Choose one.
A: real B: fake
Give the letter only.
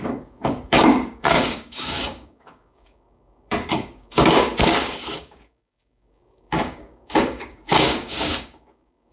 B